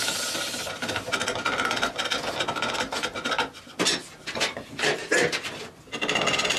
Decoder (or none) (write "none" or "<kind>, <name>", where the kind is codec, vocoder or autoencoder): none